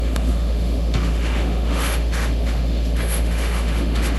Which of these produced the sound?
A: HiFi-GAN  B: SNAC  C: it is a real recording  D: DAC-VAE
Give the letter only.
D